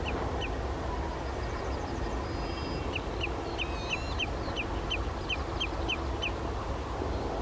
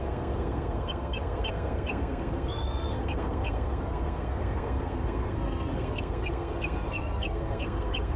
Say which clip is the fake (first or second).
second